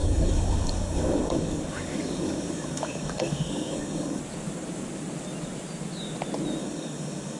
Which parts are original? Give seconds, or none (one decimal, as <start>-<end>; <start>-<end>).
4.2-6.6